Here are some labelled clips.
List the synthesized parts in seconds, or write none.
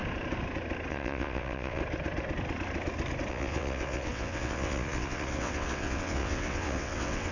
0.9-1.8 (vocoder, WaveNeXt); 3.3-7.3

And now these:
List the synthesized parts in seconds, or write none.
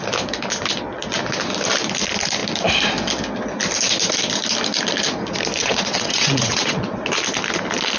5.6-6.9 (vocoder, WaveNeXt)